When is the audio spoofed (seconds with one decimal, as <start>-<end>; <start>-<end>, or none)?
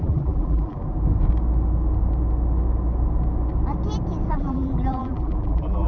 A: 0.0-0.8; 4.3-5.9